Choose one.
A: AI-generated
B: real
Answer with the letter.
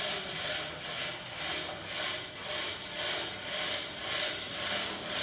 B